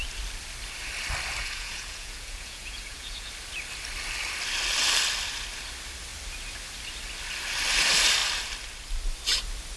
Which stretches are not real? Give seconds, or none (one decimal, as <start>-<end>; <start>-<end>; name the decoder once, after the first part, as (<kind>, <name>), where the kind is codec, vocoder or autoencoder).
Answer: 1.4-3.3 (vocoder, Vocos)